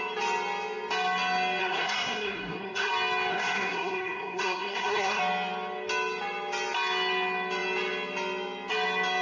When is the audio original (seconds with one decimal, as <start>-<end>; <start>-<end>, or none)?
0.0-1.6; 2.9-3.3; 5.2-9.2